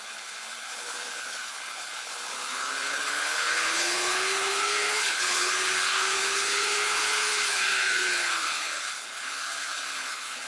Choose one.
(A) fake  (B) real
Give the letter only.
A